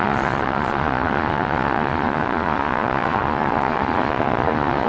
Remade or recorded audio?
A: remade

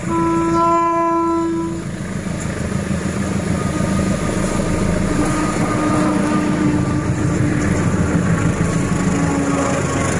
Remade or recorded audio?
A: recorded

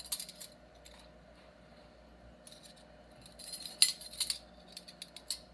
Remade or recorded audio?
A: recorded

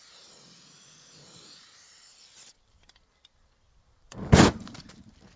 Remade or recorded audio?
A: remade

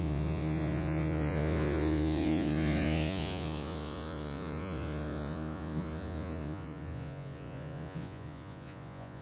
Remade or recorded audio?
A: remade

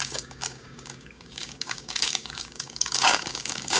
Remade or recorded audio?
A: remade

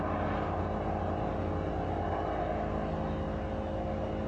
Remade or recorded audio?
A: recorded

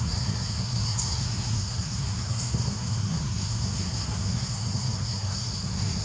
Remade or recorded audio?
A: remade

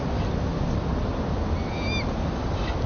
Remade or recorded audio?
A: recorded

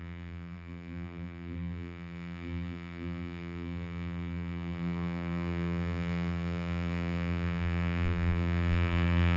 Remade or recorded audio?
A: remade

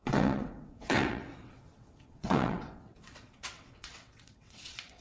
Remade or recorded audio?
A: remade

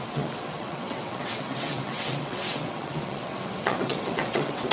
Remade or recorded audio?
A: remade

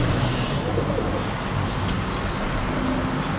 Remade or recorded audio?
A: recorded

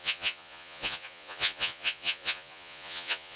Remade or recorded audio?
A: remade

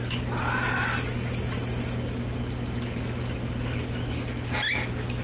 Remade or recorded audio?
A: recorded